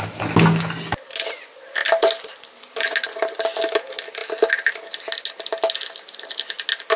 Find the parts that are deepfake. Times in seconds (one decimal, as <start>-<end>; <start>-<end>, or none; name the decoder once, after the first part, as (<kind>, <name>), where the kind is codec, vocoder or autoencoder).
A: none